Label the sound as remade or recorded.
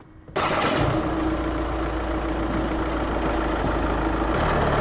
recorded